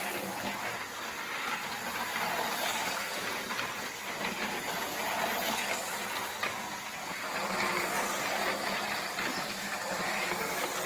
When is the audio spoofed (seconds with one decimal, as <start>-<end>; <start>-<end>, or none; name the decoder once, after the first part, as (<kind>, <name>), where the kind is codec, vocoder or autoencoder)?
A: 2.7-3.4 (vocoder, BigVGAN v2)